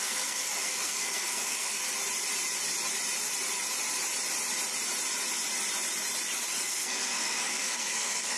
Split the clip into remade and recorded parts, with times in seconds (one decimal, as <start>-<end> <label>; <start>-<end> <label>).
0.0-1.8 remade; 1.8-6.6 recorded; 6.6-8.4 remade